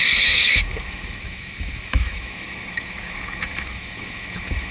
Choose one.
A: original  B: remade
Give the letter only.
B